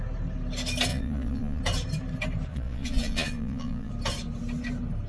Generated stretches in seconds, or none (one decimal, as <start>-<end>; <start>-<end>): 0.9-1.6; 2.5-3.9